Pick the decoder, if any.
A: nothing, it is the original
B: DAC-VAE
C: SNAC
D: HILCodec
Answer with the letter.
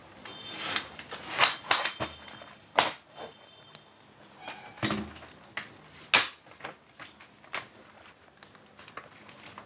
A